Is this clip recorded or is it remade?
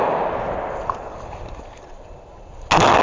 recorded